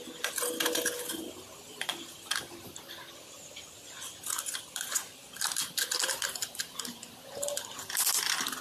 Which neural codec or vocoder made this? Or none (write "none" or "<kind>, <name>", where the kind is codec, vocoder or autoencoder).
none